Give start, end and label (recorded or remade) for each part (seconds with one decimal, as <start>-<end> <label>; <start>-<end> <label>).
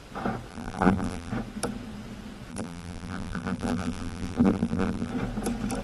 0.0-0.5 recorded; 0.5-1.3 remade; 1.3-2.5 recorded; 2.5-5.1 remade; 5.1-5.8 recorded